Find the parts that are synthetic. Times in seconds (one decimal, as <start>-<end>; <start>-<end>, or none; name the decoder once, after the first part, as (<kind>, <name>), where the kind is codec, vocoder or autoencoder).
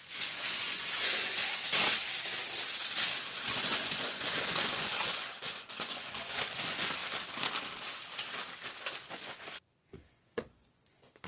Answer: 0.0-1.7 (vocoder, Vocos); 3.4-7.0; 9.1-11.3